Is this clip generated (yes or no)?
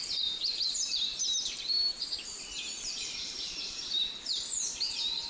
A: yes